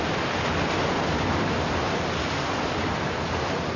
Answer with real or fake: real